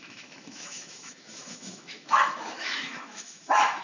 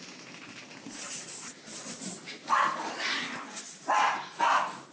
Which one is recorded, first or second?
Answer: second